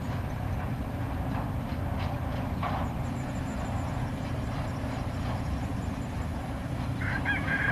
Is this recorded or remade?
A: recorded